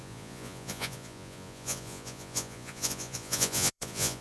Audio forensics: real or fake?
fake